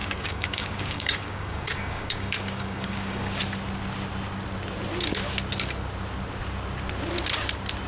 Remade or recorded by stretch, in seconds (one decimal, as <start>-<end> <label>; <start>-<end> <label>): 0.0-3.4 remade; 3.4-7.9 recorded